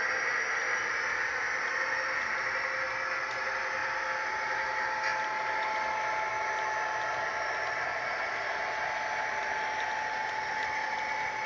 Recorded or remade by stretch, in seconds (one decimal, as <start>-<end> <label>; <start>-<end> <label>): 0.0-3.8 recorded; 3.8-5.2 remade; 5.2-11.5 recorded